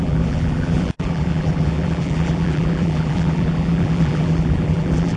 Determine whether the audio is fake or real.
fake